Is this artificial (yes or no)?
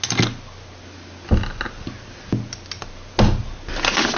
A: no